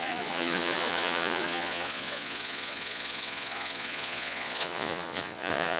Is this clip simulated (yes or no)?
yes